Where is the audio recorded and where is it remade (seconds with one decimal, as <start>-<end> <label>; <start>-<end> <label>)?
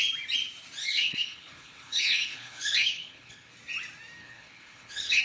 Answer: 0.0-0.8 recorded; 0.8-3.5 remade; 3.5-4.2 recorded; 4.2-5.2 remade